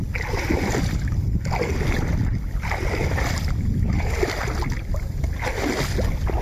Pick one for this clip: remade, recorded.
recorded